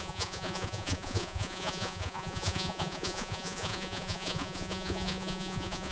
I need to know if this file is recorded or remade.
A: remade